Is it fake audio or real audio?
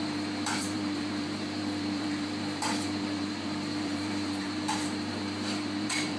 fake